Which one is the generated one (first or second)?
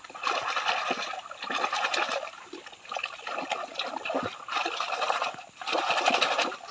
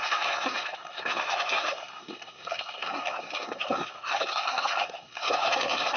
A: second